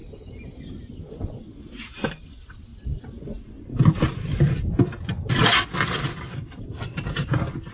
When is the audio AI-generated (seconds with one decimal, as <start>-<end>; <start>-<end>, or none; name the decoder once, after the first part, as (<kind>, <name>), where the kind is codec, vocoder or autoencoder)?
0.0-1.4 (vocoder, BigVGAN v2)